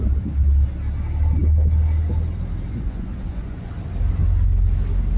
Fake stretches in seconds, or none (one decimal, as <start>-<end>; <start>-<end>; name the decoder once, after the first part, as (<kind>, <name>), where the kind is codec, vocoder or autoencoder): 2.7-3.7 (vocoder, Vocos)